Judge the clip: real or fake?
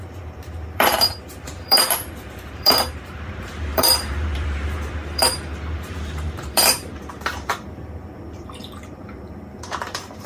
fake